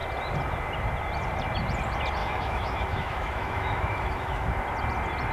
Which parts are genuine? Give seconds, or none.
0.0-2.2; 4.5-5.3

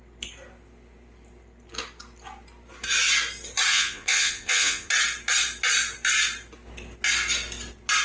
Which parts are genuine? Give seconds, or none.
0.0-3.7; 4.9-8.0

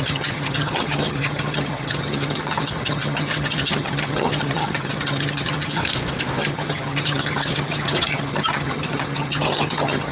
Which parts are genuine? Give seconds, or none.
5.8-6.4

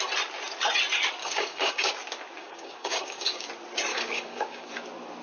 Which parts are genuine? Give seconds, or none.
0.0-1.2; 1.9-2.4; 3.5-3.9; 4.7-5.2

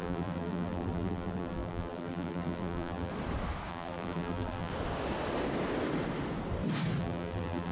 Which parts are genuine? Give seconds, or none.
3.1-3.7; 4.7-7.0

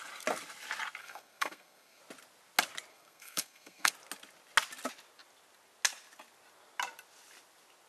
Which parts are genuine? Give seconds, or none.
0.0-1.0; 2.0-2.9; 3.9-7.9

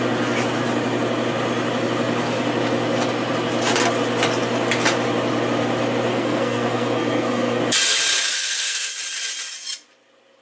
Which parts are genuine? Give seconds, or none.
0.0-6.1; 7.6-8.3; 8.9-10.4